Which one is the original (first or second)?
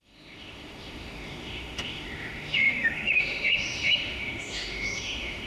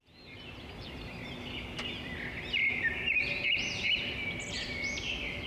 second